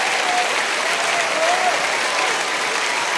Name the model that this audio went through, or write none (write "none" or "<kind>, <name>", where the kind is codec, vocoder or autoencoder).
none